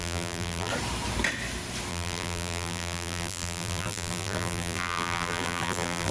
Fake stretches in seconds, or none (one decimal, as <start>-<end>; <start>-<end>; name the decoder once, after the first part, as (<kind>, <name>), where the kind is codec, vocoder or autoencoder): 0.0-0.7 (vocoder, BigVGAN v2); 1.9-6.1